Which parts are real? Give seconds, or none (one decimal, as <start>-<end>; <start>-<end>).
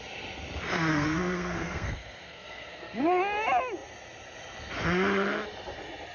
0.0-0.9; 3.2-6.1